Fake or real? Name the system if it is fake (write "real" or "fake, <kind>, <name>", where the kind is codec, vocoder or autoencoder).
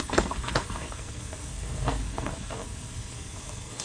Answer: fake, codec, SNAC